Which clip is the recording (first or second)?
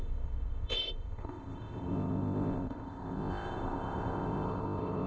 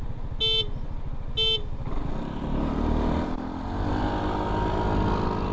second